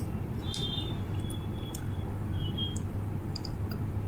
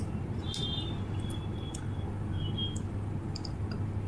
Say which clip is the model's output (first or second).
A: first